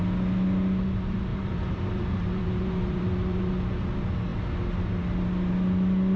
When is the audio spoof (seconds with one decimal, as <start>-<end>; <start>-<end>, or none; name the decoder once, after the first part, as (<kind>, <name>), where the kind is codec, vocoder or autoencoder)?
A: 1.3-3.5 (vocoder, BigVGAN v2)